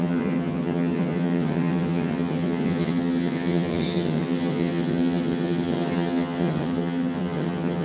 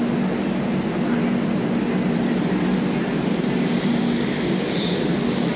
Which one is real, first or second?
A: second